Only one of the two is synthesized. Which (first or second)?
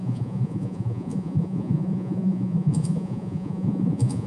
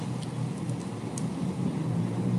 first